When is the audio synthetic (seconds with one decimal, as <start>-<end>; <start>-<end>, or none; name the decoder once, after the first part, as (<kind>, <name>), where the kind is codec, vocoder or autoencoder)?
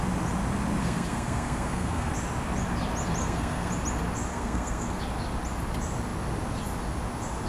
0.8-2.1 (codec, SNAC); 3.2-3.7; 4.3-5.0